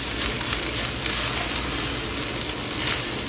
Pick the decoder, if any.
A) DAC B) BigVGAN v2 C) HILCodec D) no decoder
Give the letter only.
D